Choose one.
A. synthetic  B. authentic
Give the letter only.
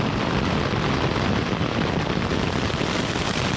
B